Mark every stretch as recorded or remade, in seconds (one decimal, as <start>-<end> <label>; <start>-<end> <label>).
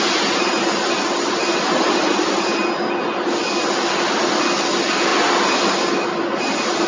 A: 0.0-6.9 recorded